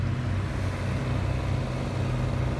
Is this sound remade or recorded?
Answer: recorded